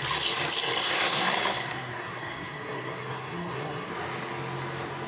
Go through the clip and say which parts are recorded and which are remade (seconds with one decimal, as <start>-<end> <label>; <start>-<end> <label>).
0.0-0.8 recorded; 0.8-3.9 remade; 3.9-5.1 recorded